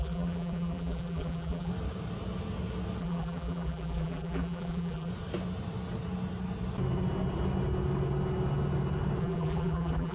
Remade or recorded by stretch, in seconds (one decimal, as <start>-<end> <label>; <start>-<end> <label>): 0.0-1.7 remade; 1.7-3.0 recorded; 3.0-5.1 remade; 5.1-9.2 recorded; 9.2-10.1 remade